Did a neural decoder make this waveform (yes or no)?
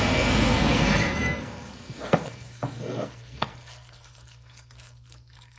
yes